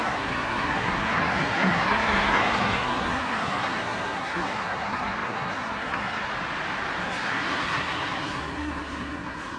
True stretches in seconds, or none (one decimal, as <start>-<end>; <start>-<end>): 6.3-7.0

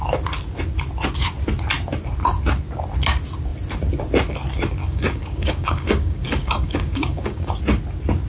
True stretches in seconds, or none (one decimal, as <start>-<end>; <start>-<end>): 0.0-4.8; 7.6-8.3

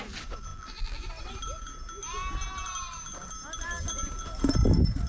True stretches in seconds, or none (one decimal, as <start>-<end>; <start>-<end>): 0.0-0.5; 1.1-5.1

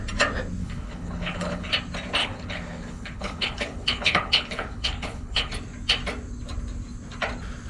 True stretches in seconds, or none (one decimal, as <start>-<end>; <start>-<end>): 0.0-0.6; 1.7-2.2; 5.5-7.7

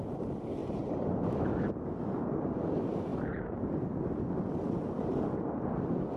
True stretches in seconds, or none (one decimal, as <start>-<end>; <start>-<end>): 0.0-0.6; 1.7-3.1; 4.5-6.2

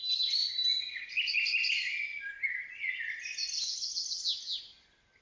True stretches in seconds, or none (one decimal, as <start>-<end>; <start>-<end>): 0.0-5.2

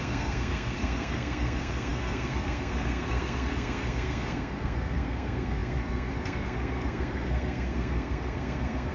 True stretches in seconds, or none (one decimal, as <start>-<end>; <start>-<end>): none

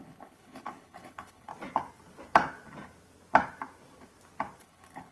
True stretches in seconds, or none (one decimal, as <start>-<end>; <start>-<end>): 1.5-4.6